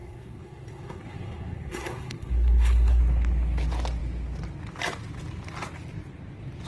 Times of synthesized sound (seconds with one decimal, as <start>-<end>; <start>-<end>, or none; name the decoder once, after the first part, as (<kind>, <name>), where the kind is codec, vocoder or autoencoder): 0.0-3.0 (codec, SNAC)